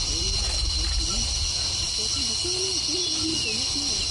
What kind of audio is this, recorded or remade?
recorded